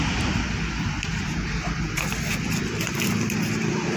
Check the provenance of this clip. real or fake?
fake